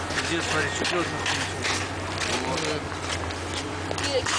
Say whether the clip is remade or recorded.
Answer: recorded